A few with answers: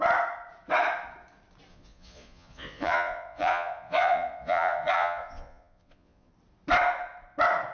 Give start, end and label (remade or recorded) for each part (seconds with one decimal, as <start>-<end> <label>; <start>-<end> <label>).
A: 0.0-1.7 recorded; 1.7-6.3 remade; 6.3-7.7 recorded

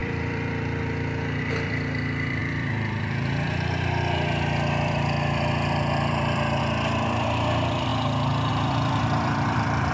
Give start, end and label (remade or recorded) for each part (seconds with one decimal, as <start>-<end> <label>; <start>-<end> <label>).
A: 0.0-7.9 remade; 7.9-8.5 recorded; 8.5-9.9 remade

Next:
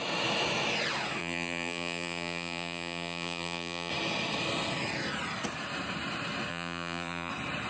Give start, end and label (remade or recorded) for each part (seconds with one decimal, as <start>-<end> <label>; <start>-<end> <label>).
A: 0.0-1.2 recorded; 1.2-3.9 remade; 3.9-6.5 recorded; 6.5-7.3 remade; 7.3-7.7 recorded

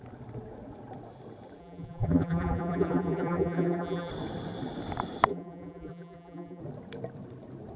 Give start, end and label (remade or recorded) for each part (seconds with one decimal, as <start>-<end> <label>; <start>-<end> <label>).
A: 0.0-1.6 recorded; 1.6-4.1 remade; 4.1-5.3 recorded; 5.3-6.6 remade; 6.6-7.8 recorded

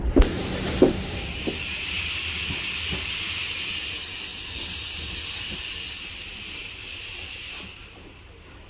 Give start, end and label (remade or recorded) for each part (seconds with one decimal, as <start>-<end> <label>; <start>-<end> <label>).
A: 0.0-8.7 recorded

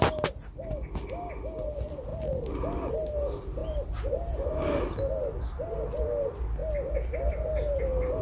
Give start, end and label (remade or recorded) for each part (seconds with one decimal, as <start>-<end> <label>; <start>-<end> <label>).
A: 0.0-8.2 recorded

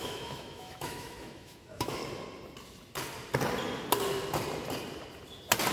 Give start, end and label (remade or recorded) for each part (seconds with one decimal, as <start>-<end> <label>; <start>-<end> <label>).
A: 0.0-2.0 remade; 2.0-5.7 recorded